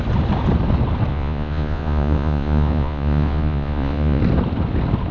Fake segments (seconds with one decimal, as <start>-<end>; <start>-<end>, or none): 1.1-4.2